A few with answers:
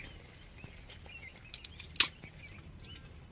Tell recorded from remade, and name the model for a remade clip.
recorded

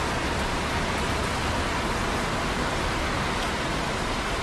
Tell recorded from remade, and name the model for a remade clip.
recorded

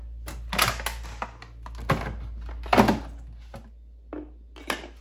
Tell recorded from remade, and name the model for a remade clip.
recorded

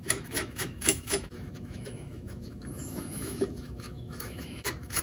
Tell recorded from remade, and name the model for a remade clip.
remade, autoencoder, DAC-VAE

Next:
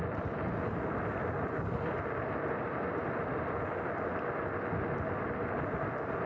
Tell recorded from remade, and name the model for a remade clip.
recorded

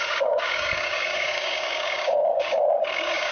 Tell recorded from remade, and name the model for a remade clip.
remade, codec, DAC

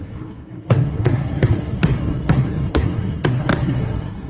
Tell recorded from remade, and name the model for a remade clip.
remade, codec, SNAC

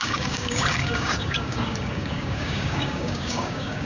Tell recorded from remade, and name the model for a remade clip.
remade, codec, DAC